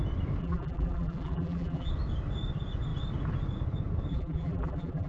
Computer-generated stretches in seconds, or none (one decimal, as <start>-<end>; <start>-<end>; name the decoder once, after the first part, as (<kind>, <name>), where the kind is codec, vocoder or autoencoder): 0.4-1.9 (vocoder, BigVGAN v2); 4.1-5.1